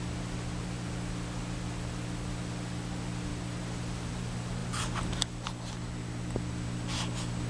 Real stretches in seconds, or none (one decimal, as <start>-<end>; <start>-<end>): 0.0-7.5